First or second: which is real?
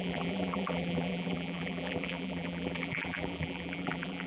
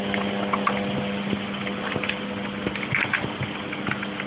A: second